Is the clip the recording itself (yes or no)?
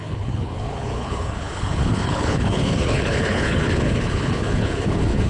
no